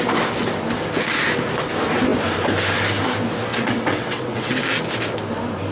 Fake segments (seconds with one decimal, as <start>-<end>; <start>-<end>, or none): 3.5-4.6